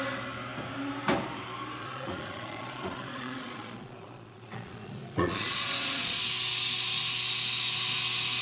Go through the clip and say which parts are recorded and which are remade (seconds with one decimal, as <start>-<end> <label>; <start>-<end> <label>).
0.0-1.8 recorded; 1.8-6.2 remade; 6.2-8.4 recorded